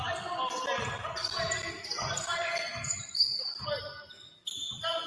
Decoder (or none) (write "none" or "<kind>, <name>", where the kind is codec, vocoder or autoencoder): none